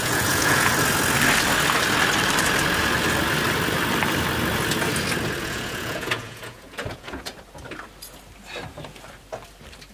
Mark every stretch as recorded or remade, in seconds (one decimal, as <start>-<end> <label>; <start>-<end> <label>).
0.0-0.7 remade; 0.7-5.4 recorded; 5.4-7.3 remade; 7.3-9.9 recorded